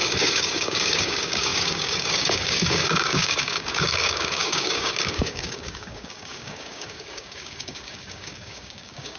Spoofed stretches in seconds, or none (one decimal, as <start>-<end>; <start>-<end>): 0.0-9.2

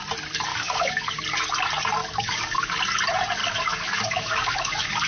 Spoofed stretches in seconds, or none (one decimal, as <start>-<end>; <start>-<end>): 0.5-1.2; 2.0-2.8; 3.4-5.1